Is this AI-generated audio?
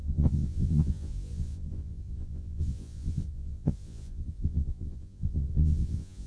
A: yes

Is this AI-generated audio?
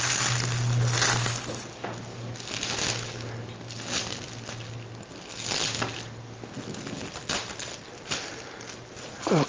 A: no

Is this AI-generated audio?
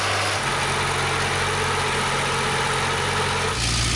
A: no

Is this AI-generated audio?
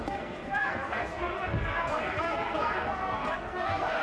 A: yes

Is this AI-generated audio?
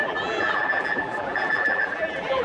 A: yes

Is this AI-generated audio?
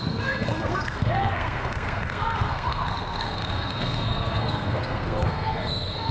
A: yes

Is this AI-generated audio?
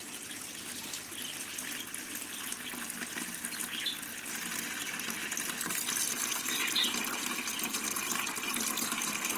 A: no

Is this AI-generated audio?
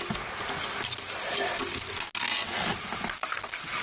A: no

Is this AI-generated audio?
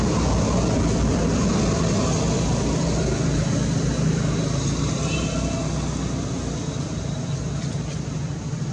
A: no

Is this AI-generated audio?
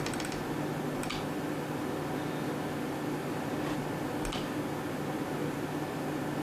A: no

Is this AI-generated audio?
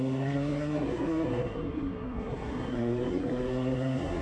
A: yes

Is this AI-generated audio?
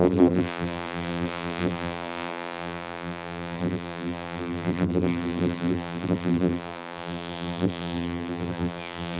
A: yes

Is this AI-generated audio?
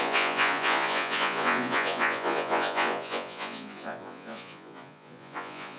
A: yes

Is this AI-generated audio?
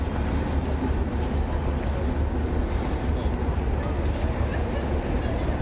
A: no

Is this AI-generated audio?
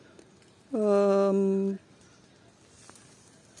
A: no